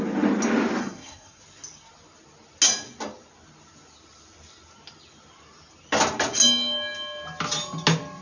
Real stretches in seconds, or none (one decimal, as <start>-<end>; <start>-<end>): 0.0-0.8; 1.4-8.2